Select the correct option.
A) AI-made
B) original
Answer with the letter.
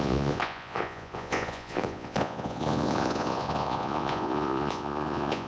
A